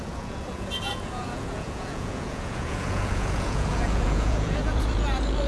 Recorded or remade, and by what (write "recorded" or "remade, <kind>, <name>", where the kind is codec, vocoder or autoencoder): remade, vocoder, Vocos